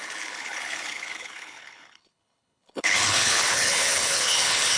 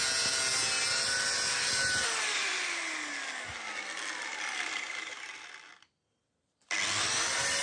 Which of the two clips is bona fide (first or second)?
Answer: second